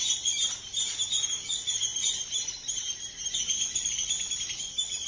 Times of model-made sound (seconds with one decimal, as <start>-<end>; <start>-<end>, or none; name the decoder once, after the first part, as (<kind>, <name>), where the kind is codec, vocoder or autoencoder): none